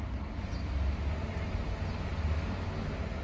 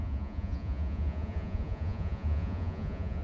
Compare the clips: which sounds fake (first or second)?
second